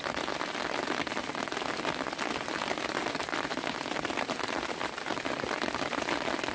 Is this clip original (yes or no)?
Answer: yes